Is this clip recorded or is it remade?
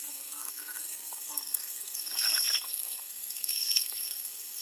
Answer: remade